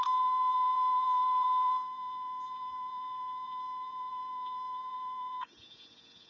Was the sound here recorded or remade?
remade